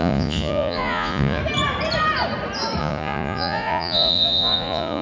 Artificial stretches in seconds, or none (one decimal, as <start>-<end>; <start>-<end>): 0.0-1.4; 2.8-5.0